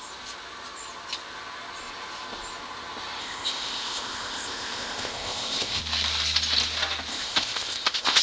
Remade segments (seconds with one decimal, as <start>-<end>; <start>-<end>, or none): 3.2-5.8; 7.1-8.2